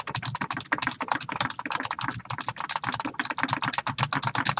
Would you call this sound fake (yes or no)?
no